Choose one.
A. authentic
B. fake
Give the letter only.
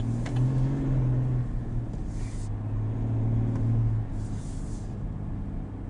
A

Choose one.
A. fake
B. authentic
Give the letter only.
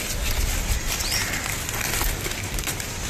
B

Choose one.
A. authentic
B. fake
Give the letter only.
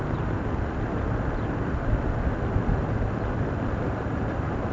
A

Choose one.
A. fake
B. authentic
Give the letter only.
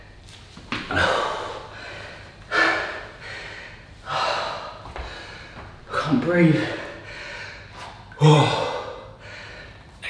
B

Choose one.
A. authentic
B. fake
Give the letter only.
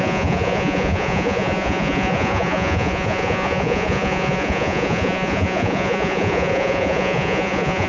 B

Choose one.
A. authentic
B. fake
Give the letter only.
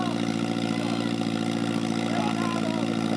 A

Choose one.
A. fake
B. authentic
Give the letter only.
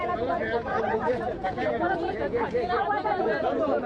A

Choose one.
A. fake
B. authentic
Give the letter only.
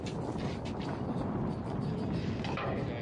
B